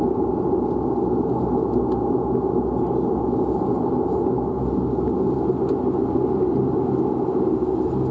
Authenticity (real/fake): real